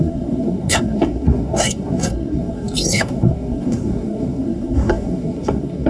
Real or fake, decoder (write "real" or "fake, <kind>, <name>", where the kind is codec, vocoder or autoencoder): fake, codec, SNAC